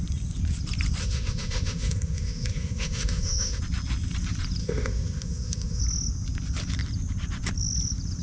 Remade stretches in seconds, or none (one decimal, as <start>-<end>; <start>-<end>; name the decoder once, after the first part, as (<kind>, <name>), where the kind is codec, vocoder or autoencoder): 1.0-3.6 (autoencoder, DAC-VAE); 4.6-5.8